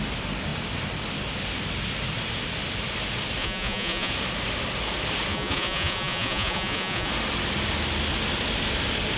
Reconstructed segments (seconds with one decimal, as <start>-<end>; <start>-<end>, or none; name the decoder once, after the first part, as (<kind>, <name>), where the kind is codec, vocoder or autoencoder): 3.4-4.1 (vocoder, Vocos); 5.3-7.1